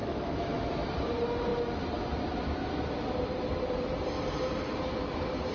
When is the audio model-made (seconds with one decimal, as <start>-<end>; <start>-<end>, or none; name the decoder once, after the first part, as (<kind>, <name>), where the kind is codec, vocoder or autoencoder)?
0.0-0.7 (autoencoder, DAC-VAE)